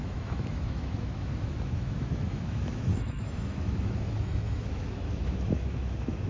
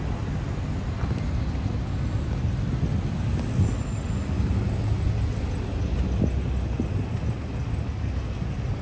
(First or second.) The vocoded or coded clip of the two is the first